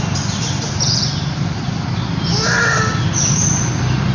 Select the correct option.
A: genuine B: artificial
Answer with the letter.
A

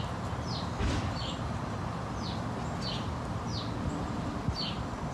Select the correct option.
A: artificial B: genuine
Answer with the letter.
B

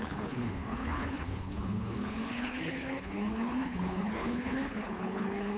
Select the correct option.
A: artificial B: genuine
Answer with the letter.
A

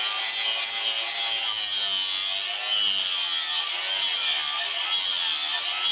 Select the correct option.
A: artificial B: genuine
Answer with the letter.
B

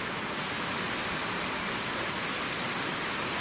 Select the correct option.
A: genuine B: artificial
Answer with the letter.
A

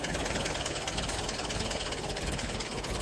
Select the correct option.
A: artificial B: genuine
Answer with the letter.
A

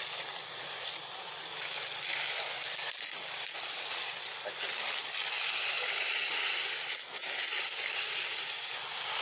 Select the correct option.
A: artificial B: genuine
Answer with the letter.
B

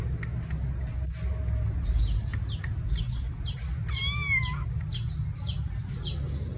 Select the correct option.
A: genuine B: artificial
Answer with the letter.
A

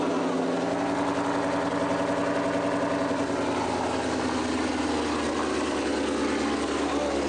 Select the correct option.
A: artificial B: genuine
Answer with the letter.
B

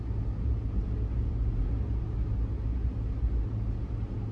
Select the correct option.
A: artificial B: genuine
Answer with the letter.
B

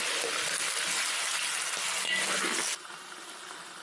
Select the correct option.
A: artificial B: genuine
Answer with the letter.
B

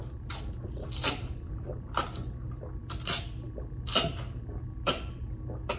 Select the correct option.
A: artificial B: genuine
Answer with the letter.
B